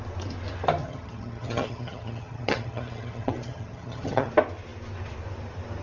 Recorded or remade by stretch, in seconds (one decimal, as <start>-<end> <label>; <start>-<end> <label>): 0.0-0.8 recorded; 0.8-4.3 remade; 4.3-5.8 recorded